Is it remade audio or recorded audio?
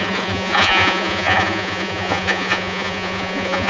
remade